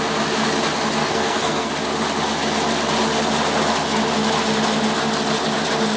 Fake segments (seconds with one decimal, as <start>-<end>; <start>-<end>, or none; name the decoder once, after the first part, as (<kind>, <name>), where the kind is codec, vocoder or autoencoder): 1.0-1.7 (codec, SNAC)